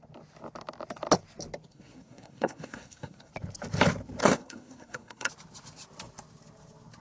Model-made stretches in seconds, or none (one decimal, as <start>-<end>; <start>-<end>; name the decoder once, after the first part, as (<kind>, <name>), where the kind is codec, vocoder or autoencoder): 1.7-3.3 (codec, SNAC); 4.2-5.3